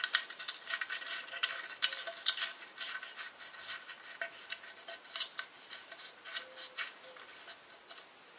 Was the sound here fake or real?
real